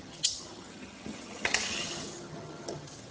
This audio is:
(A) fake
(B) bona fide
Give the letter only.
A